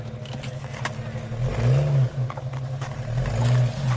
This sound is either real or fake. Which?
real